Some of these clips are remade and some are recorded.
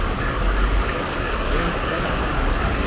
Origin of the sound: remade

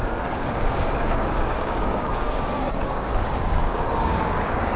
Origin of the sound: remade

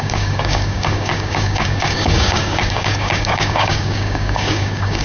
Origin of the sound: remade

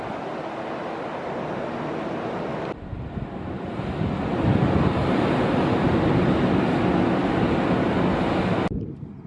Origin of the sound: recorded